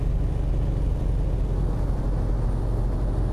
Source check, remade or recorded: recorded